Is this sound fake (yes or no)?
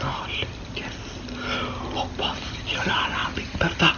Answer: no